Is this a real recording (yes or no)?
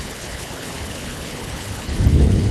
no